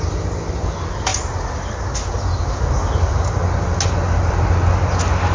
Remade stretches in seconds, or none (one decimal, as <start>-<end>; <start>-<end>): none